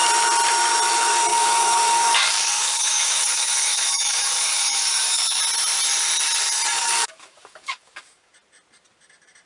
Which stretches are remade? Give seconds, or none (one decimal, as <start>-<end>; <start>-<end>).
1.3-5.4; 6.7-8.3